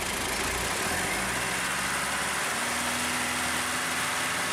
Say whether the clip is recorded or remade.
recorded